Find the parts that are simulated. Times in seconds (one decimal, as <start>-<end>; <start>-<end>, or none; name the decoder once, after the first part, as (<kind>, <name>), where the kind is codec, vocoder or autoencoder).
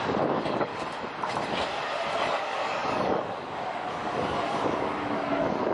0.0-0.7 (codec, DAC); 2.3-5.7